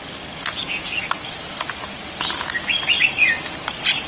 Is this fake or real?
real